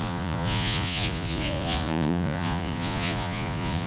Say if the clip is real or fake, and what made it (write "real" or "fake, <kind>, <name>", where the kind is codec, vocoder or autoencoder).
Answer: fake, vocoder, Vocos